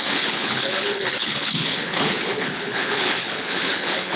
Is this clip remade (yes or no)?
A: yes